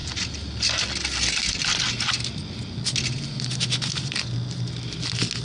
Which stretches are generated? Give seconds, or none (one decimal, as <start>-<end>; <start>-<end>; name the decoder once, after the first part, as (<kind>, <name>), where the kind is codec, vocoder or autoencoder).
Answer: none